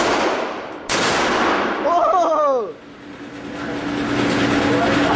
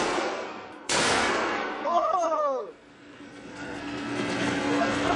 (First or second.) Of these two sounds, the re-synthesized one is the second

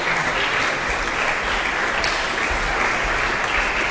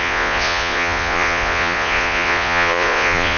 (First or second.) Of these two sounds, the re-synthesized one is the second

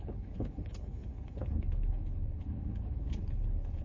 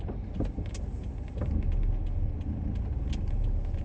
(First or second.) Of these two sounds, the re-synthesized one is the first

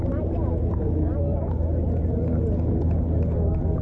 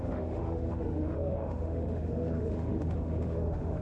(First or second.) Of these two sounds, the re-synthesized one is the second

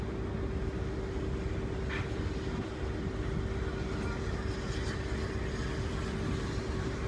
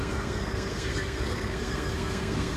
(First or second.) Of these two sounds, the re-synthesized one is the second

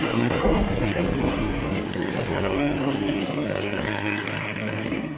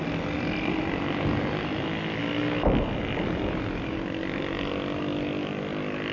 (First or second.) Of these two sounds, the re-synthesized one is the first